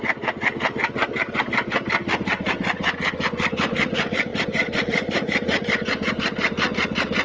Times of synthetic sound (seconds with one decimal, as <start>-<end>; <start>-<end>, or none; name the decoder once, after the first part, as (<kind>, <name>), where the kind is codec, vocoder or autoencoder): 4.3-6.1 (vocoder, BigVGAN v2)